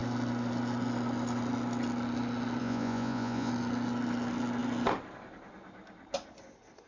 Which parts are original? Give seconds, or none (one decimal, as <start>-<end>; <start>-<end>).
0.0-2.6; 3.5-6.9